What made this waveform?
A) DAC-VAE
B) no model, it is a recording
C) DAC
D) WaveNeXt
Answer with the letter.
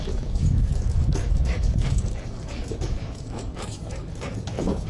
C